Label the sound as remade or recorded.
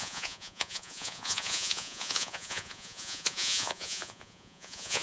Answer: remade